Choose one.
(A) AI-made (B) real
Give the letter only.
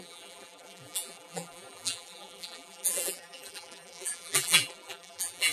A